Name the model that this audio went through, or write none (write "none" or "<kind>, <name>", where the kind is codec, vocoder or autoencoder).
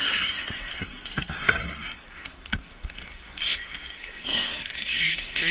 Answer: codec, SNAC